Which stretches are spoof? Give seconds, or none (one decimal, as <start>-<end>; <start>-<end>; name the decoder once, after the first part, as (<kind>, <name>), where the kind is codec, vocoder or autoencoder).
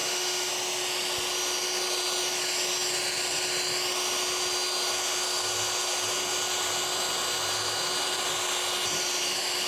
0.0-0.5 (autoencoder, DAC-VAE)